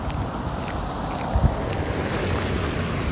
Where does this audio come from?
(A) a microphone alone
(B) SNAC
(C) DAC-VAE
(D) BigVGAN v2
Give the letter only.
A